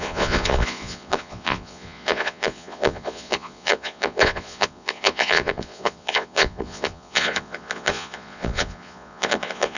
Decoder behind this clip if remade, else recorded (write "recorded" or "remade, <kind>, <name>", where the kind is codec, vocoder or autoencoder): remade, vocoder, Vocos